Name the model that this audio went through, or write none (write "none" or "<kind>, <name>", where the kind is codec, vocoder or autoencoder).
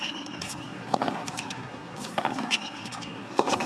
codec, SNAC